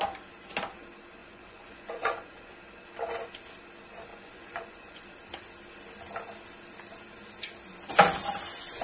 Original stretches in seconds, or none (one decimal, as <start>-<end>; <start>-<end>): 0.0-1.2; 2.5-4.1; 5.0-8.8